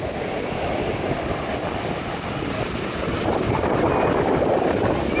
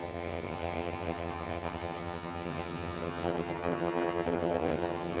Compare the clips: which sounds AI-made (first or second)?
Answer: second